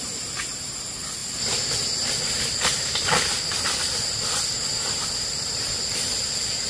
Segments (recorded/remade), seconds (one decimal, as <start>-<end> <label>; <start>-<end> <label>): 0.0-6.7 recorded